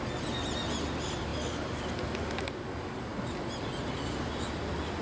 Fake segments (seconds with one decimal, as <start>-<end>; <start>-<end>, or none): none